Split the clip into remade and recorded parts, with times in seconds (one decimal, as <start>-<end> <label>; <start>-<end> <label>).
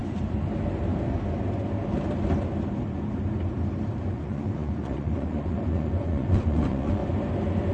0.0-4.1 recorded; 4.1-7.0 remade; 7.0-7.7 recorded